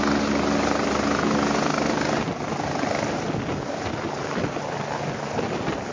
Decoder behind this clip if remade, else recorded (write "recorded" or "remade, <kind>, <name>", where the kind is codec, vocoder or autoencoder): recorded